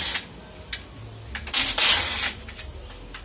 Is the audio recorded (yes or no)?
yes